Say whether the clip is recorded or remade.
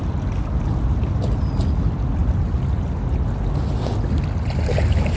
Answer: recorded